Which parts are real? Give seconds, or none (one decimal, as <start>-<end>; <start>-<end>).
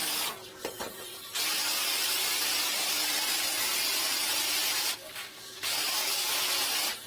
0.0-4.8; 6.3-7.1